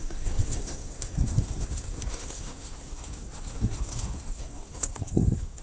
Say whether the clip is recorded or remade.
remade